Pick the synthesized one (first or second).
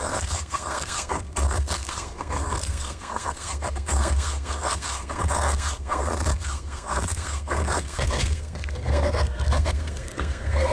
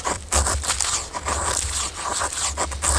first